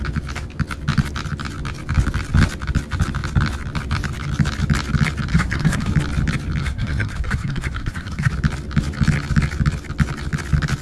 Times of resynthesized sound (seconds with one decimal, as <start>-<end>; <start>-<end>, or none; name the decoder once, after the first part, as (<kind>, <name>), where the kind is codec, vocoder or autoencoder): 5.3-5.9 (codec, SNAC); 6.6-8.3